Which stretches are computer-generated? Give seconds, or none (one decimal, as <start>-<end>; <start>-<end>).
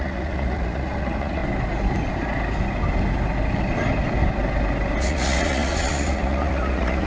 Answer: 0.0-1.4; 5.0-7.1